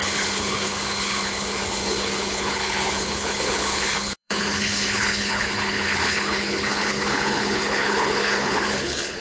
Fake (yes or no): yes